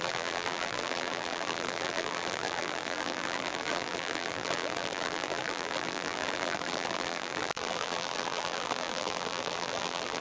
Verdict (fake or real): fake